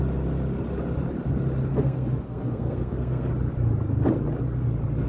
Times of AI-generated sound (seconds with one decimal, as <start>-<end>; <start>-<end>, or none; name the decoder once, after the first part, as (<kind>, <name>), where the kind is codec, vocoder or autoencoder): 1.7-3.3 (codec, SNAC)